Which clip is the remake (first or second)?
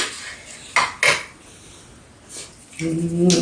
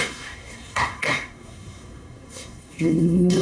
second